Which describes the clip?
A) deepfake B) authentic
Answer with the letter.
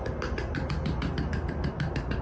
B